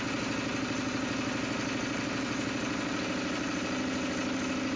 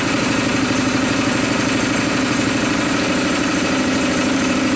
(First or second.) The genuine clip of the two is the first